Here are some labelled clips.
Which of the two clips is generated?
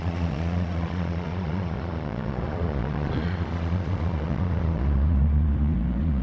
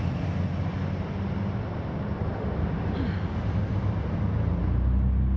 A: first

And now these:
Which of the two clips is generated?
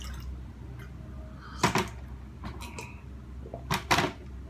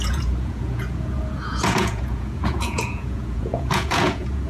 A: second